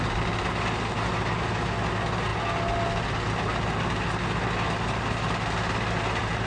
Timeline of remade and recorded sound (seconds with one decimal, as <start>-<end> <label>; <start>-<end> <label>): 0.0-6.5 recorded

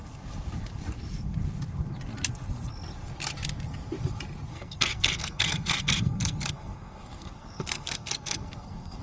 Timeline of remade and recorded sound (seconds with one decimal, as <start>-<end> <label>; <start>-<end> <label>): 0.0-4.5 recorded; 4.5-9.0 remade

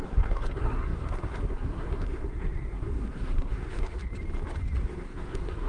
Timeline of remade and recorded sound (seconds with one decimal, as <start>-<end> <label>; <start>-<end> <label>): 0.0-4.1 remade; 4.1-4.8 recorded; 4.8-5.7 remade

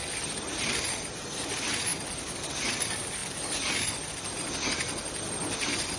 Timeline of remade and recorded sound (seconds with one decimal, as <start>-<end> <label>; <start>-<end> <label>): 0.0-6.0 recorded

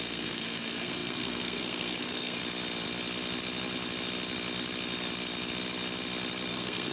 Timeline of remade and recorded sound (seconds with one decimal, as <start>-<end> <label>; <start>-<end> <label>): 0.0-2.4 remade; 2.4-6.5 recorded; 6.5-6.9 remade